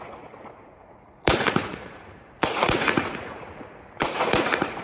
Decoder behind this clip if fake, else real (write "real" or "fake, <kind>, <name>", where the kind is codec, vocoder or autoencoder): fake, vocoder, Vocos